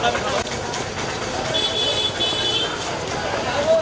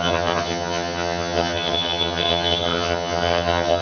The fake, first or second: second